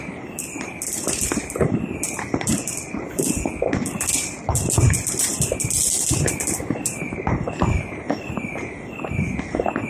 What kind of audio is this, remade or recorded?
recorded